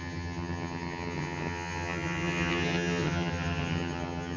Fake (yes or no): yes